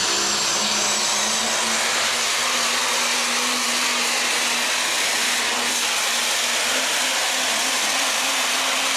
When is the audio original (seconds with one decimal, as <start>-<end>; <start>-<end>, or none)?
0.0-9.0